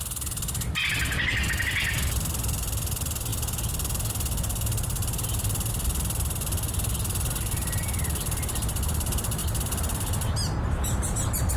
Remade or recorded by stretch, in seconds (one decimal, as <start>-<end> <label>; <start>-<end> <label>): 0.0-11.6 recorded